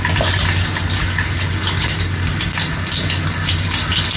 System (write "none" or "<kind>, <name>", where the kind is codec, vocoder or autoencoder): none